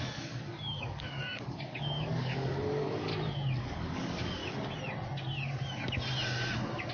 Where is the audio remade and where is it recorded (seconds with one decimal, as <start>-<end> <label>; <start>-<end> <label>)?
0.0-3.1 remade; 3.1-3.6 recorded; 3.6-4.4 remade; 4.4-6.9 recorded